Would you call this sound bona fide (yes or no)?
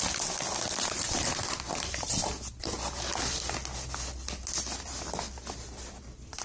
yes